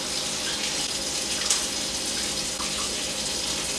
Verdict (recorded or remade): recorded